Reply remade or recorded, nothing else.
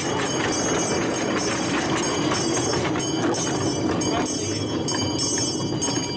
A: recorded